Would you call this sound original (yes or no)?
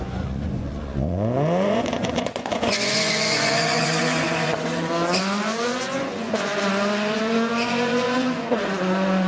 no